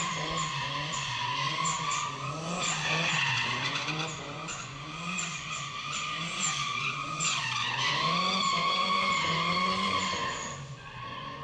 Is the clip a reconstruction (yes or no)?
yes